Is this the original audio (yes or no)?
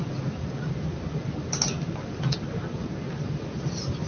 yes